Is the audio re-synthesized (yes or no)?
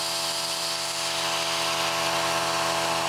no